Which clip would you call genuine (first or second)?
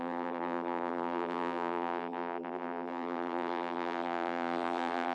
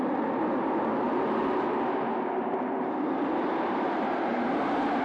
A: second